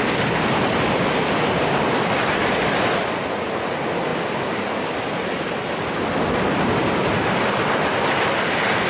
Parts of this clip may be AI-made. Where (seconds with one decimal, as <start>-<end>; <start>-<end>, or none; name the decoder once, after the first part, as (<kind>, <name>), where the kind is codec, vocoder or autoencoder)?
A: none